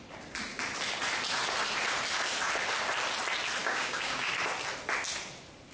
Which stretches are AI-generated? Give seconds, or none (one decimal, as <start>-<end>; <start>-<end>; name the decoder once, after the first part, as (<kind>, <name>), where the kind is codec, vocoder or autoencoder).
3.6-4.3 (codec, DAC)

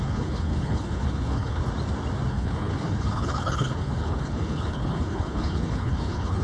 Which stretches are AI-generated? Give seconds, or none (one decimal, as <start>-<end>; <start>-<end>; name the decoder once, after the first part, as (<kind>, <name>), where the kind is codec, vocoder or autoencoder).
0.0-1.6 (codec, HILCodec); 2.3-6.4

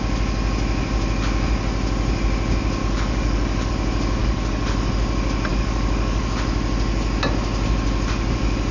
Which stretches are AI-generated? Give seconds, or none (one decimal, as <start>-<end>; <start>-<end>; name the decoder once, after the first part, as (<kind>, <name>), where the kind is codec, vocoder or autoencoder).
2.8-3.7 (codec, DAC); 4.2-4.9; 5.5-6.2

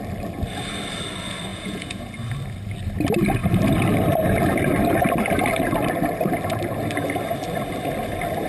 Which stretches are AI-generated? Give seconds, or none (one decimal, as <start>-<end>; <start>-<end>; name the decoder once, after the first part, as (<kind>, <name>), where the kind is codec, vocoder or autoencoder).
1.5-2.1 (vocoder, Vocos)

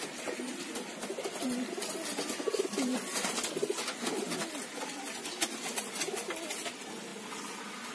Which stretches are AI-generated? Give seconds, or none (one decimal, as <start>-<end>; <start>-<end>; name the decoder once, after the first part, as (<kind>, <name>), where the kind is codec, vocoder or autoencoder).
none

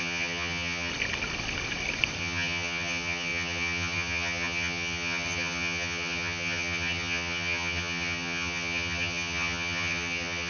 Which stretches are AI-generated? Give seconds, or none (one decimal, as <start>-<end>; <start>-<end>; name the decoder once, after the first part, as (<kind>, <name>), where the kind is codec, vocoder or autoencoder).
0.0-0.9 (vocoder, HiFi-GAN); 2.2-10.5